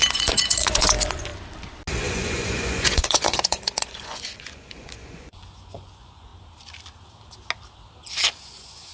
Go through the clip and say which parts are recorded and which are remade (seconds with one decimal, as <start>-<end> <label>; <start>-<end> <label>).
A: 0.0-1.3 remade; 1.3-2.0 recorded; 2.0-6.3 remade; 6.3-8.4 recorded; 8.4-8.9 remade